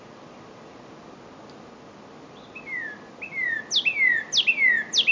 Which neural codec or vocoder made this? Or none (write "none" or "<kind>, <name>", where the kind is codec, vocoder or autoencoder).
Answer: none